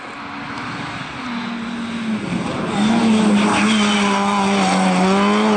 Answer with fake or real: real